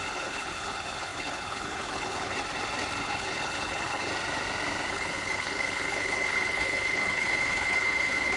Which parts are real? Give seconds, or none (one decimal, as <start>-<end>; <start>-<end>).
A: 2.3-3.0; 4.1-4.9